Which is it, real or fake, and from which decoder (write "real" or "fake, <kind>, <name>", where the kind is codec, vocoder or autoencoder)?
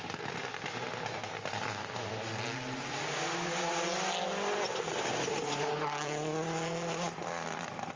real